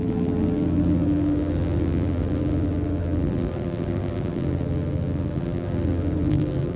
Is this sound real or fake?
fake